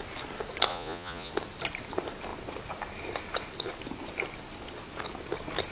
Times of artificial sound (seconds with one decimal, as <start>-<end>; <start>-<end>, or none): 0.7-1.3